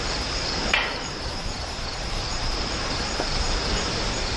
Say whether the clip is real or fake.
fake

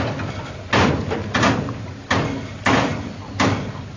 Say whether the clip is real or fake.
real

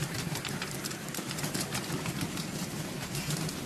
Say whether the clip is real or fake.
real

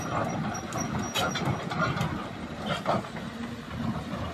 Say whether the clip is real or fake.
real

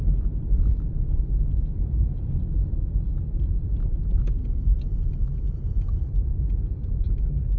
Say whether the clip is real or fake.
fake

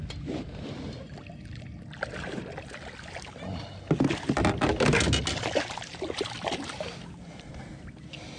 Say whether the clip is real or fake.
real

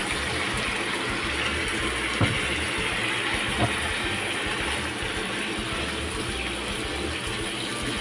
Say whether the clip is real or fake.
real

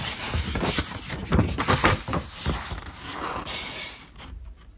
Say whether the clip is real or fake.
fake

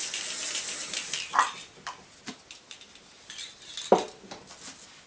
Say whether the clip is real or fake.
real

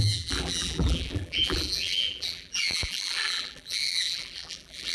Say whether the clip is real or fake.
fake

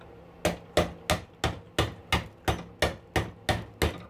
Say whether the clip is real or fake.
real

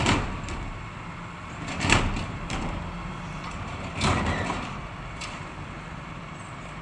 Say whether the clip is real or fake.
fake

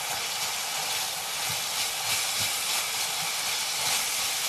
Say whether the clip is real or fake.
real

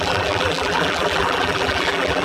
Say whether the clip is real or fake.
fake